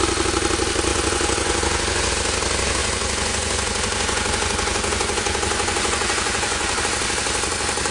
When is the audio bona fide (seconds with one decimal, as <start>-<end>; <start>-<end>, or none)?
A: 0.0-0.9; 2.1-2.8; 6.8-7.9